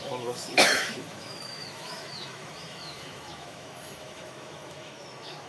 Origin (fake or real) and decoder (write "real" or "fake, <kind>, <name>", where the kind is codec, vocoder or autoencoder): fake, autoencoder, DAC-VAE